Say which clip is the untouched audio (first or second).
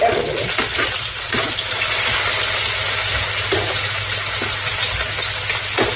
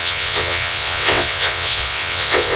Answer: first